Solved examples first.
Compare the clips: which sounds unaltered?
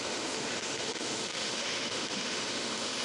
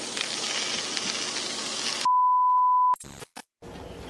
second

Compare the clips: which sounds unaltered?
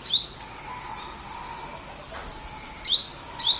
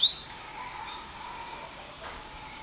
first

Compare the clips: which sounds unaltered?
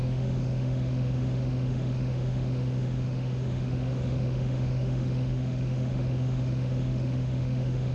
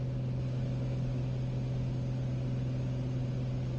second